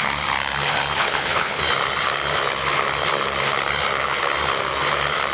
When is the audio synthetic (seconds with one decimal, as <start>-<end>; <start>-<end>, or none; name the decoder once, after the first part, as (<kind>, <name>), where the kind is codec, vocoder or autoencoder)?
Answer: 1.0-1.6 (codec, HILCodec)

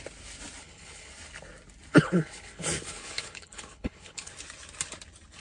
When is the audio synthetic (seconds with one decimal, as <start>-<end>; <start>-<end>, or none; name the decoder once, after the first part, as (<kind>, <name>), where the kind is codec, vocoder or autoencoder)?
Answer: 0.6-1.1 (codec, HILCodec); 1.9-4.3

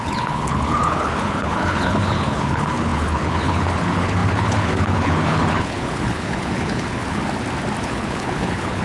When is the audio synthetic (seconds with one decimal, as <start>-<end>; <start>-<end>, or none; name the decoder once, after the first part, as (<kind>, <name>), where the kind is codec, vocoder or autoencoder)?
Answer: 0.0-7.2 (codec, HILCodec); 7.8-8.8

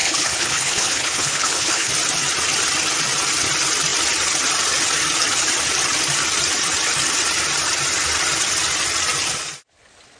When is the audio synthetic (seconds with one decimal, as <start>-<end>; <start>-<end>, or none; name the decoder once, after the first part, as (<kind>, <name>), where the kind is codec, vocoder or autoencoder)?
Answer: 0.0-1.9 (codec, HILCodec)

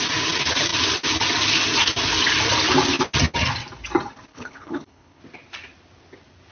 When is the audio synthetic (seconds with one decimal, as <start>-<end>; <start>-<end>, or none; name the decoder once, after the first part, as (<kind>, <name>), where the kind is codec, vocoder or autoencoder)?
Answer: 4.3-5.2 (codec, HILCodec)